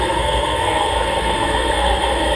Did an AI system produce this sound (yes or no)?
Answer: yes